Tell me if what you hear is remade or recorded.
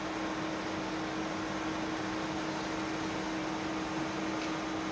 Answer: recorded